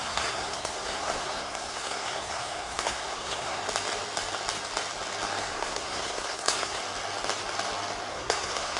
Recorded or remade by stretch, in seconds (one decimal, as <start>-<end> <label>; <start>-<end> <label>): 0.0-3.6 remade; 3.6-5.4 recorded; 5.4-6.8 remade; 6.8-8.1 recorded; 8.1-8.8 remade